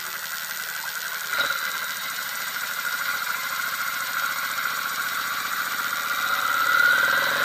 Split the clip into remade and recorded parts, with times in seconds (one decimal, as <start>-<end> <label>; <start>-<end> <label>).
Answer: 0.0-2.0 recorded; 2.0-5.8 remade; 5.8-7.4 recorded